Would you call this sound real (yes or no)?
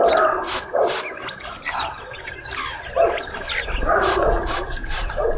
yes